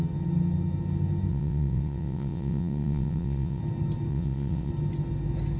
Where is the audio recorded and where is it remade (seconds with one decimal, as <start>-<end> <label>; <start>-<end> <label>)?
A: 0.0-1.3 recorded; 1.3-3.6 remade; 3.6-4.1 recorded; 4.1-4.7 remade; 4.7-5.6 recorded